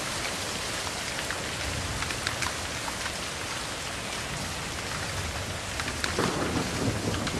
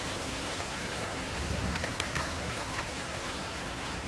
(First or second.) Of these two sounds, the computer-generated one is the second